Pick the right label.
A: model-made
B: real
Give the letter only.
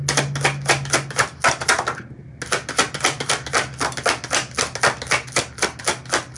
B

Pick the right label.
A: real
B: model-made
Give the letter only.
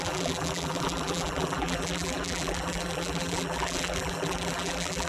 B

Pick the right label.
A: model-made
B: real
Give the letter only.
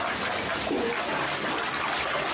B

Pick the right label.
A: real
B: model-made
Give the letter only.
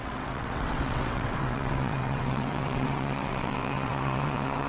B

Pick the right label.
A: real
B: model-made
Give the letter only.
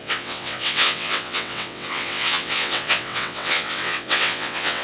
B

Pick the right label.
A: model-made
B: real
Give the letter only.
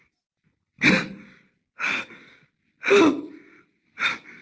B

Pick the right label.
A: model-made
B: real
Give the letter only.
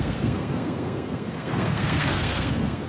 A